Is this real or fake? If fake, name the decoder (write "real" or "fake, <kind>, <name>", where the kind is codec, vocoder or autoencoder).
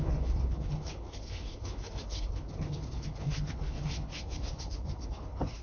fake, codec, HILCodec